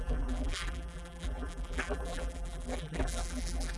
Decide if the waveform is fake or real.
fake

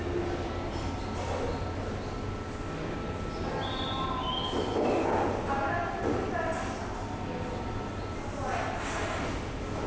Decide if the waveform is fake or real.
real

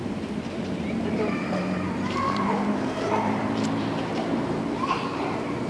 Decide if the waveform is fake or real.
fake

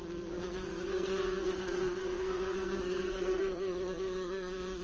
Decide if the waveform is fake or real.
fake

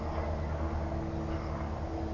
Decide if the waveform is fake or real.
real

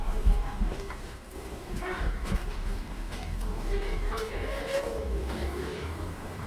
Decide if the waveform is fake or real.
fake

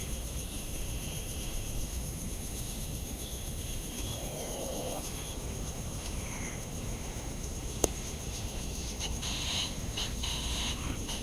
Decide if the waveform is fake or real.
fake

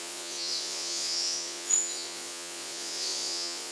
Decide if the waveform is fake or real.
fake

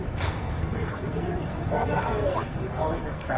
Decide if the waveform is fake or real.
fake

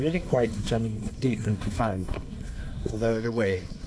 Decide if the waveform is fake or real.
fake